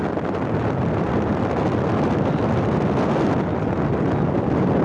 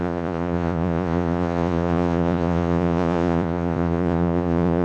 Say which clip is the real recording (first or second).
first